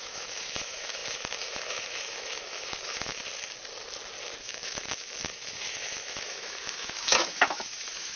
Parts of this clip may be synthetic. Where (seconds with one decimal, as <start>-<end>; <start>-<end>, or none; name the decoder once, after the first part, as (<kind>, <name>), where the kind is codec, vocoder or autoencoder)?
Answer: 0.0-3.2 (autoencoder, DAC-VAE); 4.4-8.2